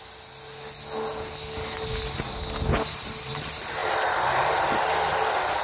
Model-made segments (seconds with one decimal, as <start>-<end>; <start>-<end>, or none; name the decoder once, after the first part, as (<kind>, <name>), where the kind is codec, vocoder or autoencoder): none

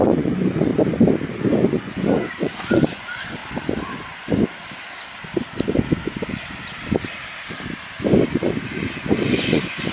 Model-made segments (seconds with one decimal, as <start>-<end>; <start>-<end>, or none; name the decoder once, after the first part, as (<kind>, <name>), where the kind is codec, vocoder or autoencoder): 0.0-0.7 (vocoder, Vocos); 1.3-3.4; 8.3-9.9

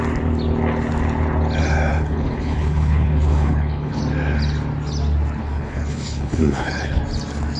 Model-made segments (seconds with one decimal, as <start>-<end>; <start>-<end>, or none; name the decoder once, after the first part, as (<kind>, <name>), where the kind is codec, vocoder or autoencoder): 1.9-4.0 (codec, HILCodec); 5.4-7.0

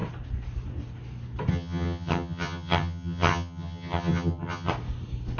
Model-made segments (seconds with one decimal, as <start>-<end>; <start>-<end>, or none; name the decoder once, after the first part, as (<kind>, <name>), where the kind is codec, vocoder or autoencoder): 1.5-4.7 (vocoder, HiFi-GAN)

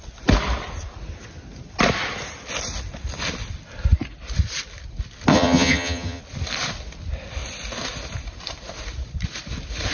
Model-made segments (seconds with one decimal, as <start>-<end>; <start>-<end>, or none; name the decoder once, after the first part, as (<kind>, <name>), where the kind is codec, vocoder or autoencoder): 5.3-6.2 (vocoder, HiFi-GAN)

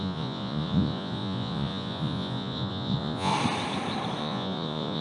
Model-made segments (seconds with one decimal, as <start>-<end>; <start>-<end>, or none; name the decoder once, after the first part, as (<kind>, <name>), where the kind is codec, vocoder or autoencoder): 0.0-3.3 (vocoder, Vocos); 4.2-5.0

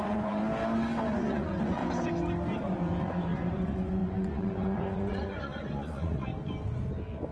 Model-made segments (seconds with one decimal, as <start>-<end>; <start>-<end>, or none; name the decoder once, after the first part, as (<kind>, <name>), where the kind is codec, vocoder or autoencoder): 0.0-0.4 (vocoder, Vocos); 1.1-1.8; 3.0-6.3

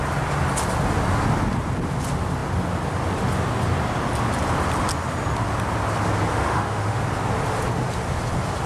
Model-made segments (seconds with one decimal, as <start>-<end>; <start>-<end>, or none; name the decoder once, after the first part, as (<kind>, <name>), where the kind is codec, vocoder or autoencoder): 6.3-7.0 (autoencoder, DAC-VAE)